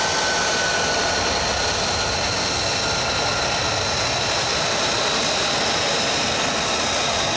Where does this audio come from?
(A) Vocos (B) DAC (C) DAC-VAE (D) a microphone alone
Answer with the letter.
D